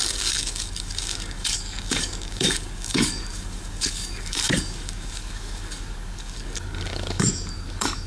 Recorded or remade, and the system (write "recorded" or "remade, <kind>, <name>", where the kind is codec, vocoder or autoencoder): remade, codec, DAC